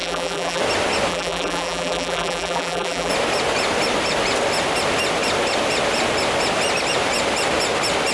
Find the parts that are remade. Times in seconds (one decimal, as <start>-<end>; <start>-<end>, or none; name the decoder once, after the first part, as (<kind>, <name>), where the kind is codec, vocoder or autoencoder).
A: 0.0-0.6 (vocoder, BigVGAN v2); 1.1-3.1